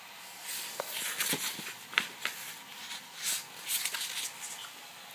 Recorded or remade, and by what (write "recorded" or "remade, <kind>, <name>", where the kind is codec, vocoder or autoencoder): recorded